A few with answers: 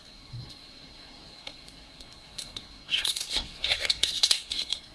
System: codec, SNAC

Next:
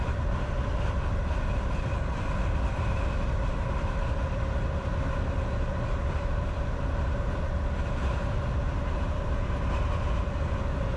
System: none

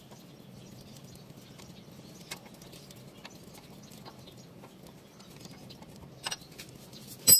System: none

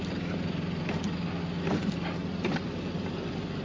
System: none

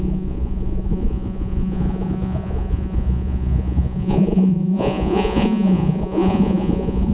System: vocoder, Vocos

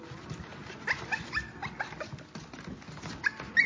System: none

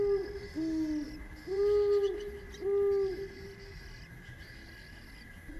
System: none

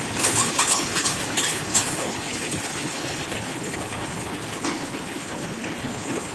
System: codec, HILCodec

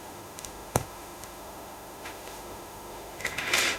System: autoencoder, DAC-VAE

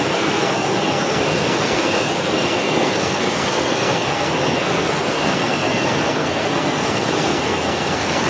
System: codec, SNAC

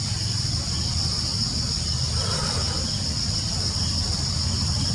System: none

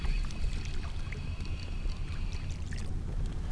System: none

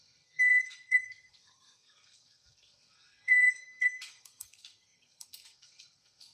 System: codec, SNAC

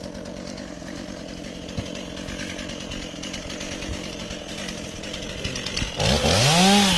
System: none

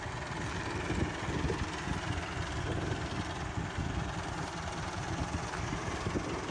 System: none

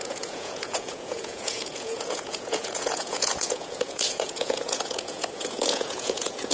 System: vocoder, Vocos